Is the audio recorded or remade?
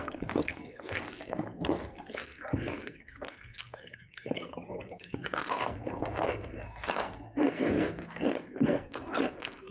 remade